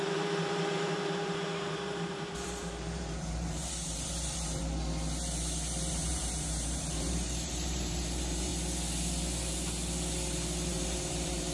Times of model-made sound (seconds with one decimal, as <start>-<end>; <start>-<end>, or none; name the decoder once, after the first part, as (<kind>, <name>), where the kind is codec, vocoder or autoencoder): 0.0-4.6 (vocoder, BigVGAN v2); 5.9-8.5; 10.7-11.5